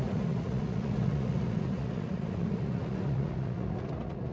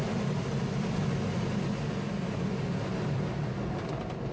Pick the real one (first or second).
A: second